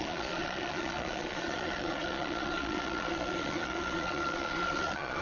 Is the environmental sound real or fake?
fake